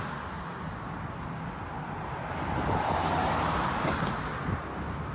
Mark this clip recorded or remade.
recorded